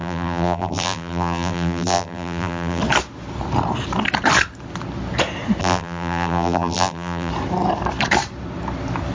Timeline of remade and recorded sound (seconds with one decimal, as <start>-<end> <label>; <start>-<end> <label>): 0.0-2.8 remade; 2.8-5.6 recorded; 5.6-7.3 remade; 7.3-9.1 recorded